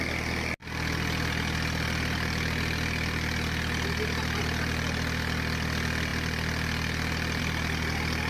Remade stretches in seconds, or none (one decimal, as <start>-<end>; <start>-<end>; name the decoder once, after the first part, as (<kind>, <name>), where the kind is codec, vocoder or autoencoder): none